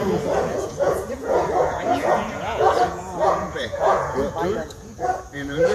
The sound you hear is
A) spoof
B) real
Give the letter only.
A